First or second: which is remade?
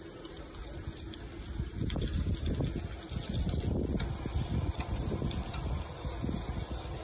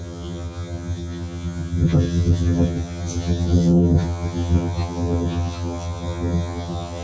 second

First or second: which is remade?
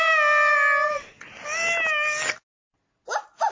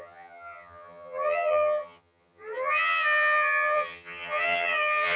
second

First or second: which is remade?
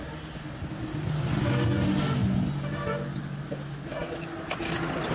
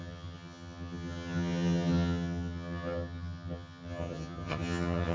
second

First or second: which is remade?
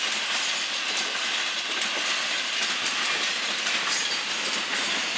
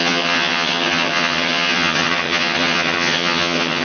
second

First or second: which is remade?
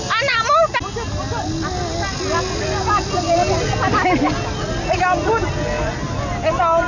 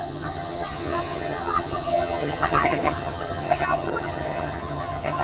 second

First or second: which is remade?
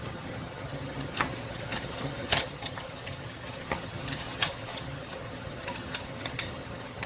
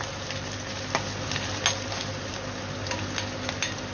first